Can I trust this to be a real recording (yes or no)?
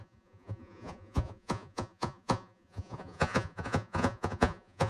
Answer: no